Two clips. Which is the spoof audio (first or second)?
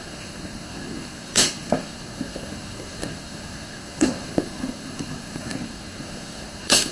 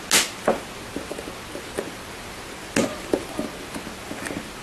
first